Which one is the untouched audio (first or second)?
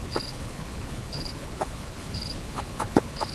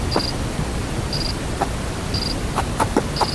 second